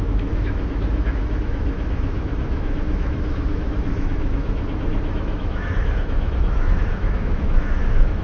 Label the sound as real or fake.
fake